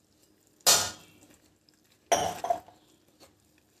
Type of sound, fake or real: real